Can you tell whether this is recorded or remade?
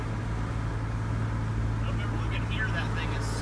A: recorded